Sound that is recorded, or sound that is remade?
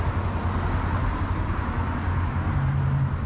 recorded